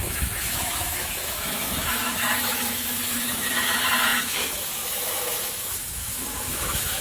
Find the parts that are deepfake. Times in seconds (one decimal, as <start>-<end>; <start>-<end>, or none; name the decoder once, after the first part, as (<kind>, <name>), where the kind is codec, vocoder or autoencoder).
0.0-7.0 (autoencoder, DAC-VAE)

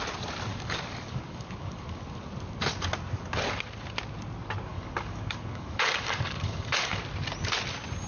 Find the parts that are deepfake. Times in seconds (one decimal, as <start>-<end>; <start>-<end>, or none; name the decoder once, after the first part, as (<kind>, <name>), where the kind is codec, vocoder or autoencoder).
0.5-2.2 (codec, DAC); 4.7-7.0